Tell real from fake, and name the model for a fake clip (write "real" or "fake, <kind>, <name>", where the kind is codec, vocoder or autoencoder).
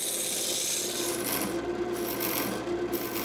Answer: real